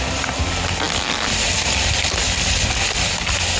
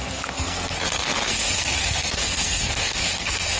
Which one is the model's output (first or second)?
second